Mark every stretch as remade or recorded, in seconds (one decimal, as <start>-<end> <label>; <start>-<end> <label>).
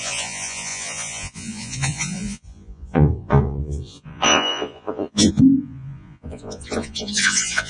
0.0-7.7 remade